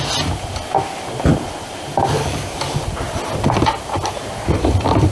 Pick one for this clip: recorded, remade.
recorded